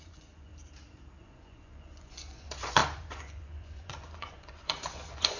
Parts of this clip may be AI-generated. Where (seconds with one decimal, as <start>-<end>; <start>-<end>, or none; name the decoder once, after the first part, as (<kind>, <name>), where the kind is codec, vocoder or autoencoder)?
0.0-0.5 (vocoder, Vocos); 1.2-5.4